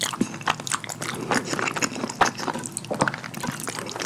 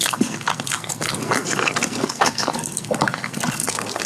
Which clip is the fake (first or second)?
second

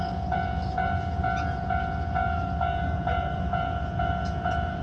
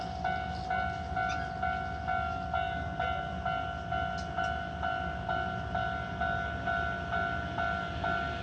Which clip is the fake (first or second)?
first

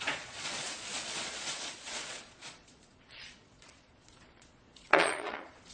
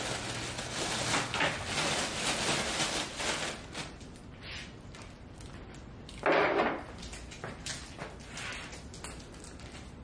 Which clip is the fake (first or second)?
first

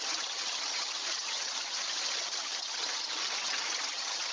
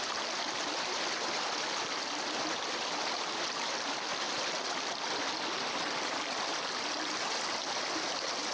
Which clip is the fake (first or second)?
first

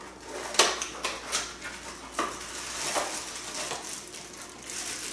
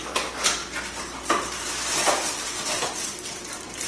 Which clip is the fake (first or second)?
second